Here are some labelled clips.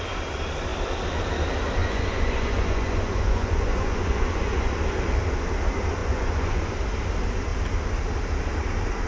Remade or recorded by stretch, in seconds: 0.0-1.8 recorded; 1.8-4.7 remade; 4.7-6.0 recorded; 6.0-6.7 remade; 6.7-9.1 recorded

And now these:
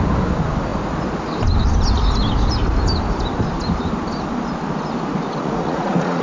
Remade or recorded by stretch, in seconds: 0.0-5.4 recorded; 5.4-6.2 remade